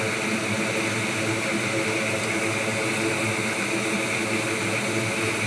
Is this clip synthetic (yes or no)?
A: no